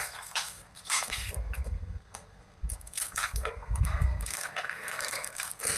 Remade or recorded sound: remade